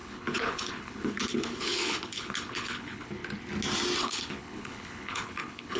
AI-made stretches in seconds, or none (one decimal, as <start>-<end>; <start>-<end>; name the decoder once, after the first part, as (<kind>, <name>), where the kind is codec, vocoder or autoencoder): 0.0-3.2 (codec, HILCodec); 4.0-5.8